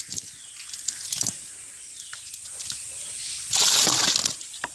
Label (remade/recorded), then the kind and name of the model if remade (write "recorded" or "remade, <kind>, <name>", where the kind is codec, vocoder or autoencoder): recorded